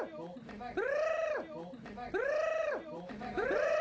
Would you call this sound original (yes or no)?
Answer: no